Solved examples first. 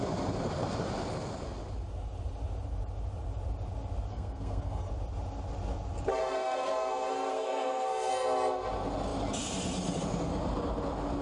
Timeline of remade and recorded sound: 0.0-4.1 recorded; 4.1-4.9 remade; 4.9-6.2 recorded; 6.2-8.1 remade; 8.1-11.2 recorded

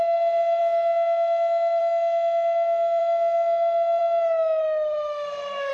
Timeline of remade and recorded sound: 0.0-4.6 recorded; 4.6-5.7 remade

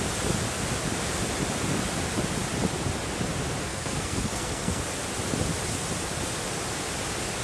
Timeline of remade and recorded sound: 0.0-3.7 recorded; 3.7-4.8 remade; 4.8-7.4 recorded

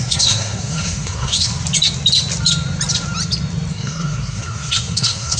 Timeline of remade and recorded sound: 0.0-1.5 remade; 1.5-3.7 recorded; 3.7-5.4 remade